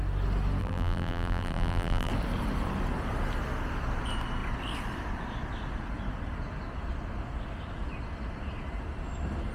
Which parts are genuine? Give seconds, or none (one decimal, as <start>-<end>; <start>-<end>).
0.0-0.6; 2.1-9.5